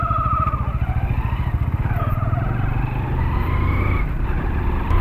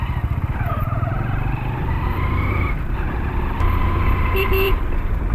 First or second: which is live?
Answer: first